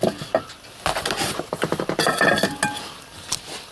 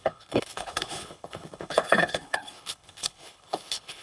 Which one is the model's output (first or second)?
second